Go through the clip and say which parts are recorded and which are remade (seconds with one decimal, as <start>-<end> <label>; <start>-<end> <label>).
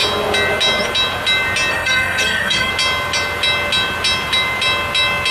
0.0-1.7 recorded; 1.7-2.7 remade; 2.7-5.3 recorded